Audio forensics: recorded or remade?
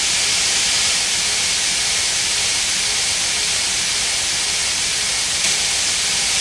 recorded